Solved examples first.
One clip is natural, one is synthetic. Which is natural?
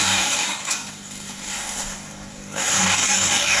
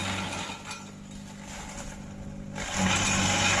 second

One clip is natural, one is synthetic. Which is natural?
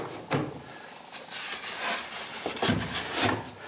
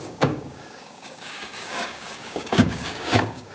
first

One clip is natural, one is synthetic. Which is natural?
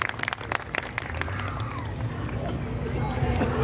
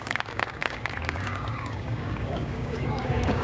first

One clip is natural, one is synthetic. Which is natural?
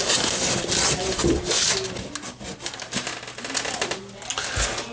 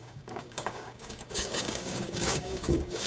first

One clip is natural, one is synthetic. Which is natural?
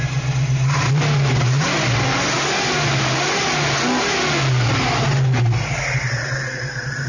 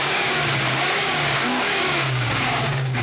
first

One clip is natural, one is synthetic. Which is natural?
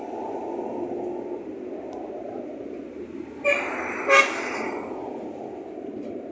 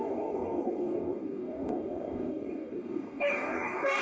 first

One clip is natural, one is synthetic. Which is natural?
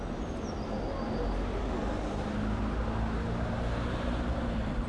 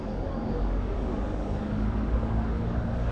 first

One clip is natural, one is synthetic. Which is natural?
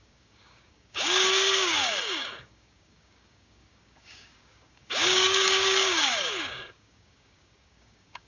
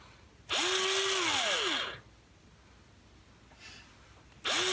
second